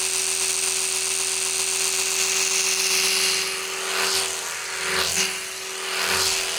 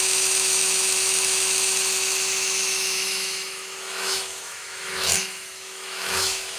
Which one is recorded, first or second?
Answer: first